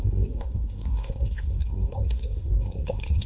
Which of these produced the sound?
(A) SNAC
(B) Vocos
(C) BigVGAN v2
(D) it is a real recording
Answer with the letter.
A